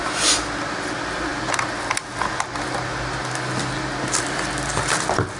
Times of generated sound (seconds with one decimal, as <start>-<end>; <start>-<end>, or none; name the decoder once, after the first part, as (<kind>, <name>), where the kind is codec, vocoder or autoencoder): none